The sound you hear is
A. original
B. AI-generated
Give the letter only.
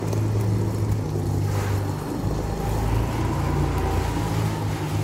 A